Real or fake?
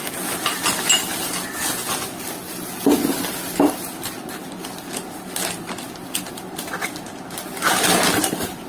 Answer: real